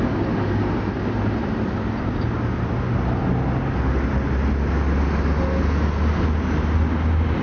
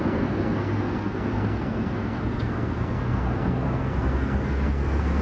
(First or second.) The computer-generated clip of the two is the second